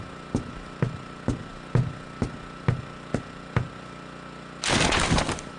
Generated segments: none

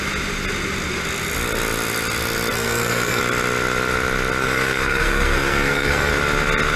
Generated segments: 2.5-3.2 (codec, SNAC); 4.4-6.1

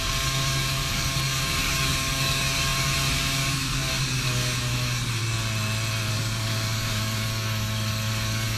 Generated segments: 0.0-5.2 (codec, DAC); 6.1-8.6